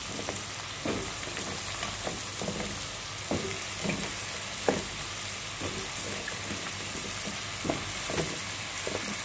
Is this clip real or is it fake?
real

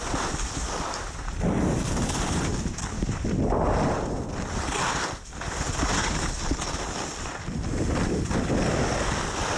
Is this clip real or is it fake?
real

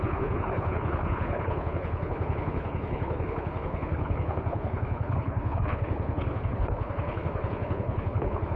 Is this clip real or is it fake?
fake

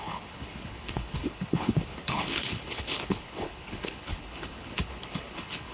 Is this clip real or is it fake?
fake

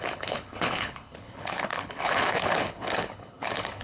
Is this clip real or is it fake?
fake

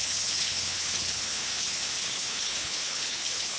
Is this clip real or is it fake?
fake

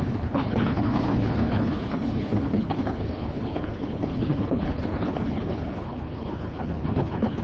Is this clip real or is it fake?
fake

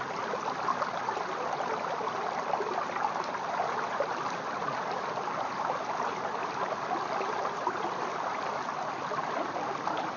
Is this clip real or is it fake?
real